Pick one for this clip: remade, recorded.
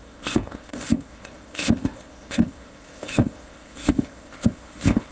remade